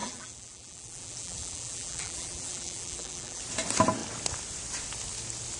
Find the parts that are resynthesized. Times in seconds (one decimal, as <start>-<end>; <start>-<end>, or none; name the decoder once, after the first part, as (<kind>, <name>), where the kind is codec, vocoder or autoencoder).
0.0-3.4 (vocoder, BigVGAN v2)